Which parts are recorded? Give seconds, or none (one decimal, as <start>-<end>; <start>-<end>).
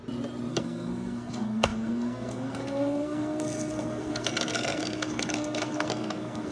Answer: 0.0-0.5